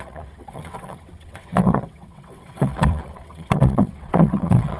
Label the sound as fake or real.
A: fake